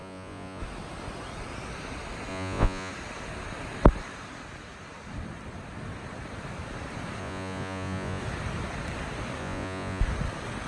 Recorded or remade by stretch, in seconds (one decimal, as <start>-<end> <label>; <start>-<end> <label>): 0.0-0.6 remade; 0.6-2.3 recorded; 2.3-2.9 remade; 2.9-7.2 recorded; 7.2-8.2 remade; 8.2-9.4 recorded; 9.4-10.0 remade; 10.0-10.7 recorded